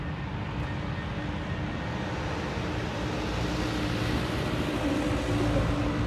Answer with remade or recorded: recorded